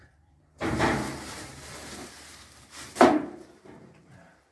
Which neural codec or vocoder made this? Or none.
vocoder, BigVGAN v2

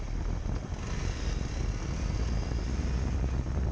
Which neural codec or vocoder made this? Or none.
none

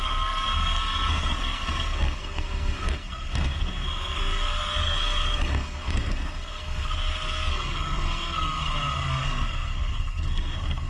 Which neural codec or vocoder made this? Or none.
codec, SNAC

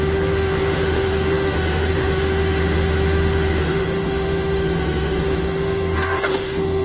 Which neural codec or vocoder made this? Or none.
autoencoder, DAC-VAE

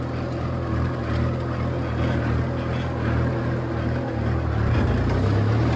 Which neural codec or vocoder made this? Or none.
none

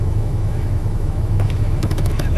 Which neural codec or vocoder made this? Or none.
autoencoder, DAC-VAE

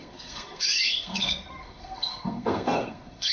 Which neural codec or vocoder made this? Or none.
codec, SNAC